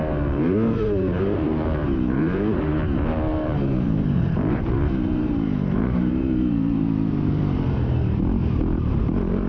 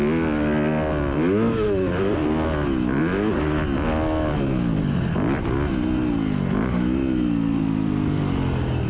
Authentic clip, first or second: second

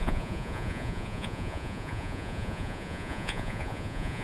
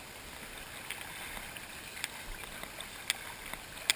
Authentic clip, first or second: second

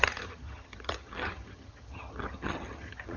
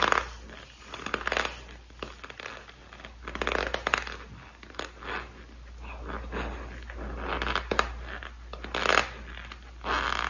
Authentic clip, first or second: second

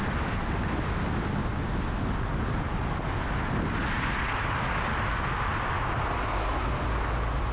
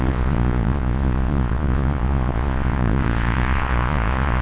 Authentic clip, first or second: first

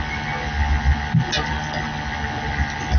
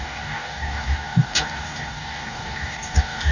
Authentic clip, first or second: first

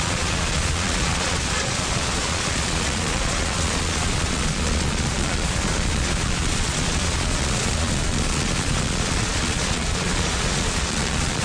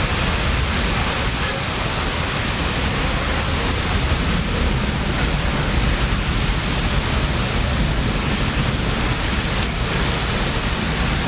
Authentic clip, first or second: second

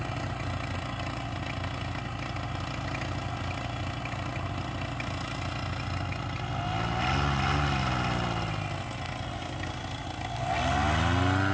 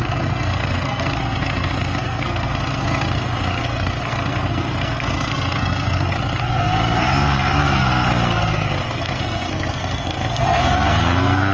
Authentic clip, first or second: first